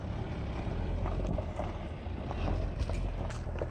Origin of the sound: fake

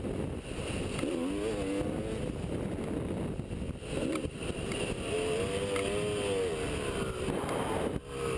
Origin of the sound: real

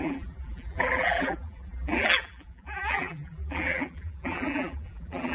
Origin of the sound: fake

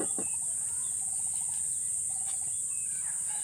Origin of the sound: fake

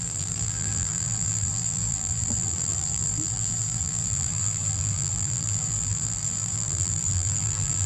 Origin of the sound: fake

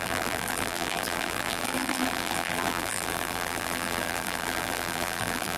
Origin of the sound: fake